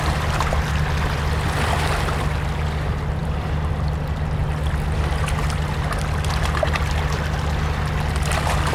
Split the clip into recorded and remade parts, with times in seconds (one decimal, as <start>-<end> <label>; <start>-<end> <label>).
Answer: 0.0-3.2 recorded; 3.2-3.7 remade; 3.7-8.7 recorded